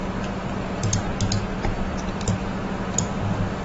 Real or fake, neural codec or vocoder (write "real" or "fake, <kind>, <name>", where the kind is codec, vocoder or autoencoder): real